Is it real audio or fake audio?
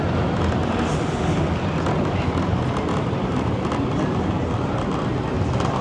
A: real